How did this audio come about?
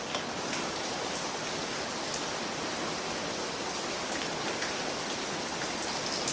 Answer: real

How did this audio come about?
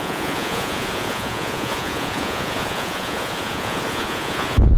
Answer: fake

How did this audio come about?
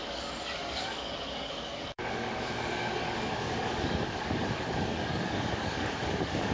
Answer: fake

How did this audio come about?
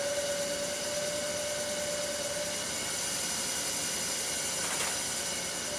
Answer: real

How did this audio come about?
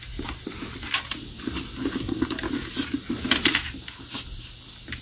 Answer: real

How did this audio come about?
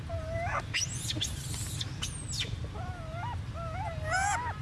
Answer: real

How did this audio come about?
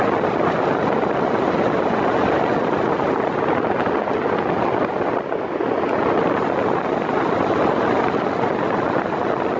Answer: real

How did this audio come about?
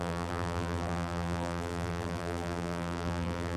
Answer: fake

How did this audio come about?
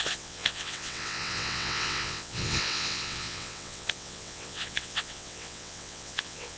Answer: fake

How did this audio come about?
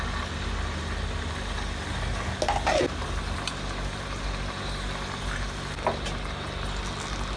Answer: real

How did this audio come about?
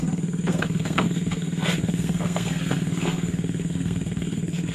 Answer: fake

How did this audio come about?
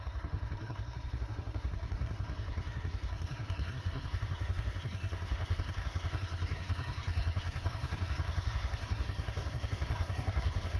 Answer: fake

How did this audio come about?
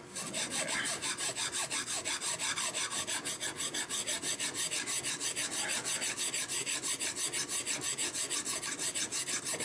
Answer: real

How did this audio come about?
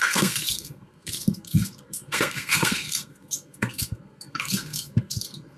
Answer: fake